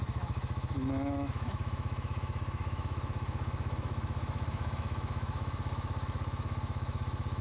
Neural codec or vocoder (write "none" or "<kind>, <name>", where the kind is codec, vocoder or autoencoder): autoencoder, DAC-VAE